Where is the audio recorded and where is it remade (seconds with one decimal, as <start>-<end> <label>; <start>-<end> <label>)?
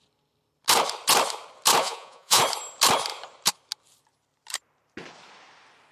0.0-1.8 recorded; 1.8-2.4 remade; 2.4-5.9 recorded